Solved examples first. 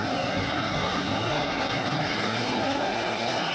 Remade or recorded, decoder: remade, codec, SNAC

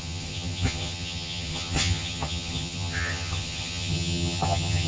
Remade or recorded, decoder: remade, vocoder, HiFi-GAN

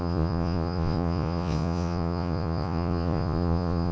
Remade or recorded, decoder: remade, vocoder, Vocos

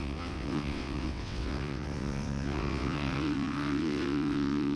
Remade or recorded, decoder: remade, vocoder, WaveNeXt